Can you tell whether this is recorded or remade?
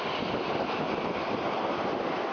recorded